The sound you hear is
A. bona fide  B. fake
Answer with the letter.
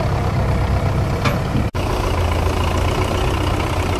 A